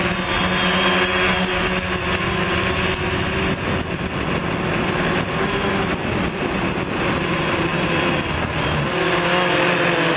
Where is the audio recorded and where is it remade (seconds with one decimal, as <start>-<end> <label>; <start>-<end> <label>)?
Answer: 0.0-10.2 recorded